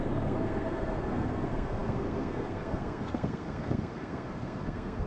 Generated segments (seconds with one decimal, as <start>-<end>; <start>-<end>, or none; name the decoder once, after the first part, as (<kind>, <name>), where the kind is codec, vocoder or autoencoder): 0.0-5.1 (codec, SNAC)